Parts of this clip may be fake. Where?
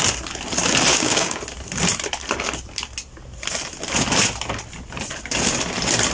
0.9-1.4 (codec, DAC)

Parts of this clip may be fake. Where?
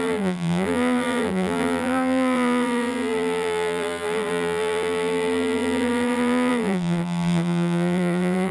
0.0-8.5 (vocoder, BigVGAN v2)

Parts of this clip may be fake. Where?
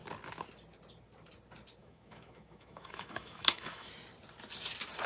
1.8-3.9 (autoencoder, DAC-VAE)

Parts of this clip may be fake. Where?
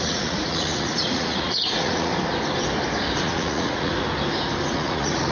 0.0-2.1 (vocoder, Vocos); 3.2-3.9; 4.7-5.3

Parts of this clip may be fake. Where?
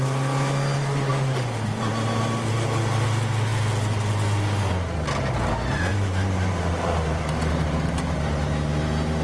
1.1-1.8 (vocoder, BigVGAN v2); 5.9-8.1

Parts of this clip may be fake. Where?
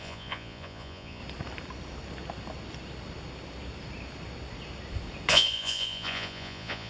0.0-1.2 (vocoder, Vocos); 5.3-6.9